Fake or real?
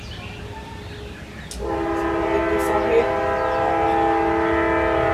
real